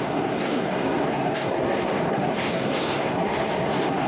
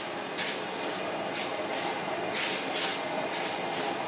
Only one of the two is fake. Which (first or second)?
first